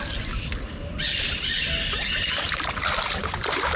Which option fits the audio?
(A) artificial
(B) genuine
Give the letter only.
B